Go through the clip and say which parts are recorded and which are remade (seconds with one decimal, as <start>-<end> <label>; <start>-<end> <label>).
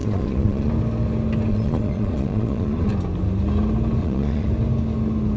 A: 0.0-0.7 remade; 0.7-1.5 recorded; 1.5-2.9 remade; 2.9-4.0 recorded; 4.0-4.5 remade; 4.5-5.4 recorded